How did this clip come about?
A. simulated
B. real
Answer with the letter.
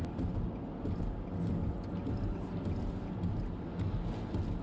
B